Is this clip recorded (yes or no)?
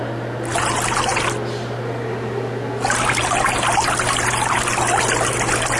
yes